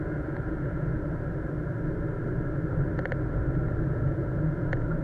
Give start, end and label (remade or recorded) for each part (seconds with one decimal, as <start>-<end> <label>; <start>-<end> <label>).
0.0-0.9 remade; 0.9-3.9 recorded; 3.9-5.0 remade